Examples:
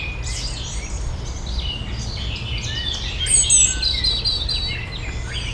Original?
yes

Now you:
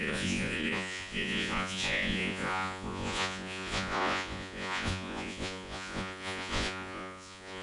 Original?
no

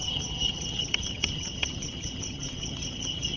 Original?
no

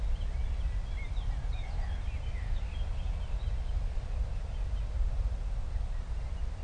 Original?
yes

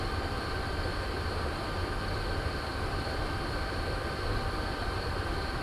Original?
yes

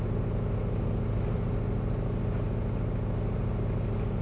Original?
yes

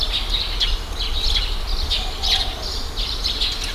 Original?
yes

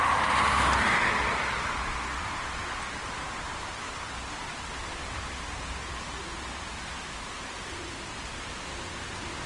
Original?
yes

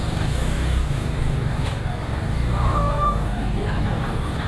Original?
no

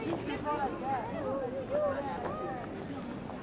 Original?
yes